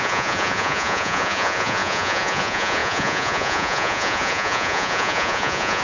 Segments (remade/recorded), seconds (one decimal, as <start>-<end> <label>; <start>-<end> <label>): 0.0-5.8 remade